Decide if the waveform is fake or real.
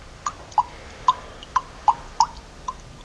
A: real